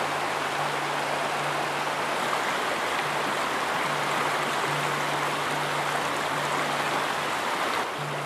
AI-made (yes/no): no